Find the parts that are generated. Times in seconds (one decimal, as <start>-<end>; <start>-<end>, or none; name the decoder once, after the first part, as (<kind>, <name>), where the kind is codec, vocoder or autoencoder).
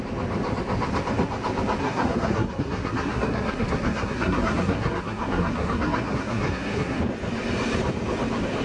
1.8-7.0 (codec, SNAC)